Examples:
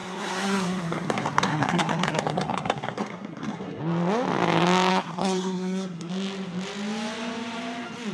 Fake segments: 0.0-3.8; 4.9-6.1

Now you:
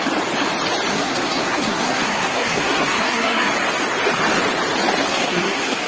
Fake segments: 0.9-3.5; 5.0-5.9